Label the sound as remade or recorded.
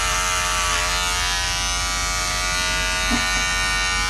recorded